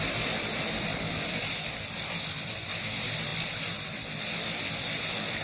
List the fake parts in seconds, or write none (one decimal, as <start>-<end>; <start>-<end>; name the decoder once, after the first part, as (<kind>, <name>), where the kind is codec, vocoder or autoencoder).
none